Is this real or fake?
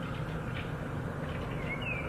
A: real